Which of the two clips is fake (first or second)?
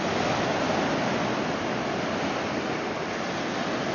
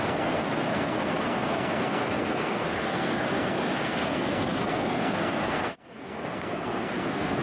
second